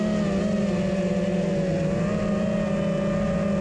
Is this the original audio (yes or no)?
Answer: yes